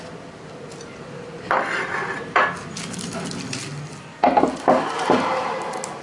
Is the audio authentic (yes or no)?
yes